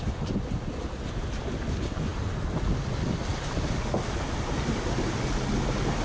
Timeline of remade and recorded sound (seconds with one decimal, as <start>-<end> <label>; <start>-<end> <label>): 0.0-6.0 recorded